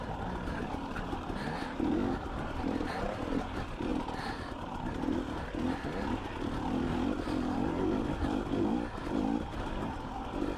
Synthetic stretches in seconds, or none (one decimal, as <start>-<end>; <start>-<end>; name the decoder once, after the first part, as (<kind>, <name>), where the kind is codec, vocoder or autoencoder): none